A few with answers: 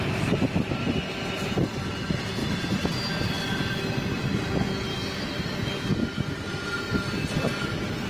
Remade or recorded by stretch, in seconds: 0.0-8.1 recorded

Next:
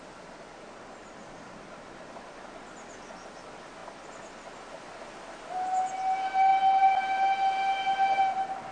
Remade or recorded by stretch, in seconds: 0.0-1.0 recorded; 1.0-2.6 remade; 2.6-8.7 recorded

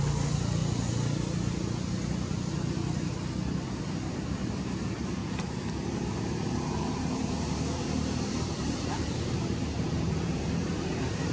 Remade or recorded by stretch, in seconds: 0.0-0.6 remade; 0.6-4.1 recorded; 4.1-5.2 remade; 5.2-7.0 recorded; 7.0-11.3 remade

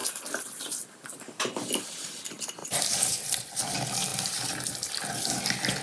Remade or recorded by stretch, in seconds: 0.0-2.6 recorded; 2.6-3.5 remade; 3.5-4.1 recorded; 4.1-4.9 remade; 4.9-5.8 recorded

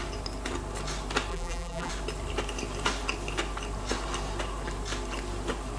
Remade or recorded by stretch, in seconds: 0.0-1.3 recorded; 1.3-1.9 remade; 1.9-5.8 recorded

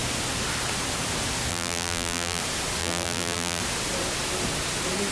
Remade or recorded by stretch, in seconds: 0.0-1.5 recorded; 1.5-2.4 remade; 2.4-2.8 recorded; 2.8-3.6 remade; 3.6-5.1 recorded

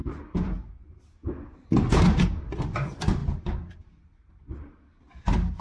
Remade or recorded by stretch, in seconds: 0.0-1.0 remade; 1.0-3.2 recorded; 3.2-4.3 remade; 4.3-5.6 recorded

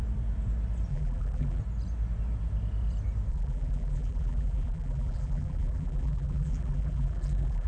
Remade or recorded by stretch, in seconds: 0.0-0.9 recorded; 0.9-1.6 remade; 1.6-3.3 recorded; 3.3-7.7 remade